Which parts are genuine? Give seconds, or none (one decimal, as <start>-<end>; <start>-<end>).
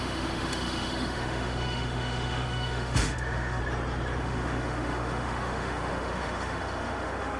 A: 3.6-4.2